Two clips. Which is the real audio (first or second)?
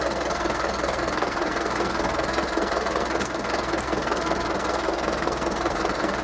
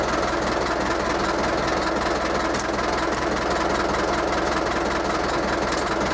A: second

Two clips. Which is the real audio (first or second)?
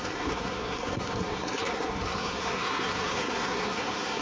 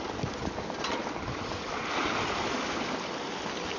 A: second